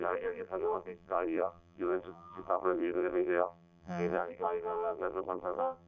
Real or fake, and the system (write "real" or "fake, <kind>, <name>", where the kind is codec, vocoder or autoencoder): fake, vocoder, BigVGAN v2